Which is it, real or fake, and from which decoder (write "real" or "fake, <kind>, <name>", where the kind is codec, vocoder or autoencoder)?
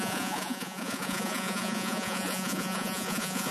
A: fake, vocoder, Vocos